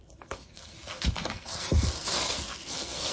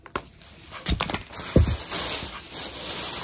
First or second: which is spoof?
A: first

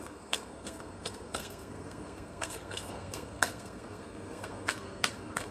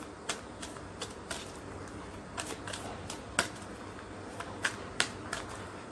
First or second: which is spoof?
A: first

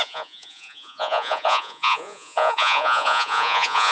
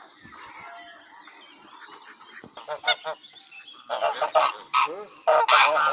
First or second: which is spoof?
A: first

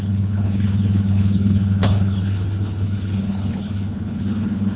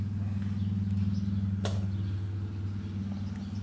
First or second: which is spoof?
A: first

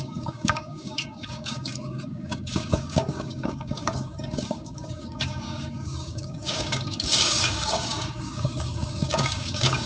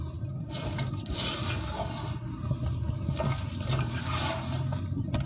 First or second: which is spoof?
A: first